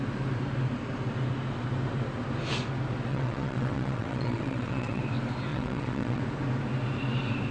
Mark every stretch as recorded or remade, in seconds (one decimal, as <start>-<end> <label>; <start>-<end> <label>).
0.0-3.1 recorded; 3.1-5.0 remade; 5.0-5.5 recorded; 5.5-6.2 remade; 6.2-7.5 recorded